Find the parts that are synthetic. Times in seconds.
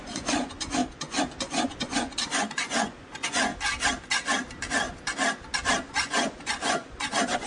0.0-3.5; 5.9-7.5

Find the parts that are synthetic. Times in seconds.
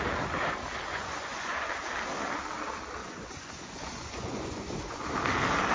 0.9-1.7; 3.0-5.1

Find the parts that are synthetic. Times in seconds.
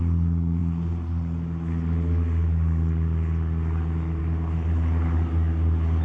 none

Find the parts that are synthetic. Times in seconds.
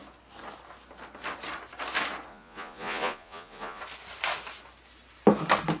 2.3-3.8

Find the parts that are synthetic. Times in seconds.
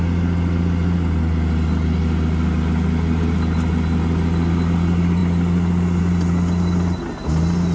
none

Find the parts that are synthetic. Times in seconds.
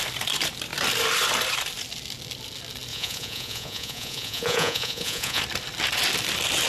2.9-5.4